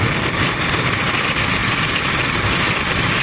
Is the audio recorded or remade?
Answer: recorded